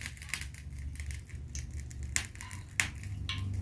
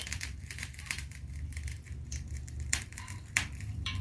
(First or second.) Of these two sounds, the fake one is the second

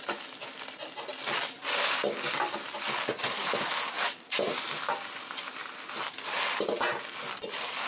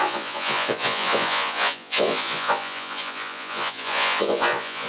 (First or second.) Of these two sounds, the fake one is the second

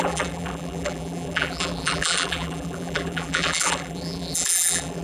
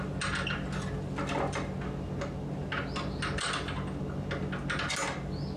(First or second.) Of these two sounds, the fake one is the first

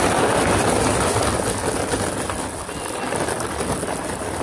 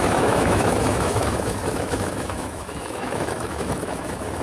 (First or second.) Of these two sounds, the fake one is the second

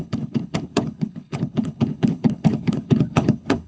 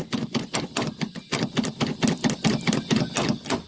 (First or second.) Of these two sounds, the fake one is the first